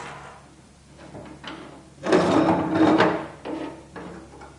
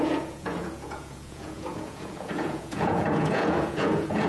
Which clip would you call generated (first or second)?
second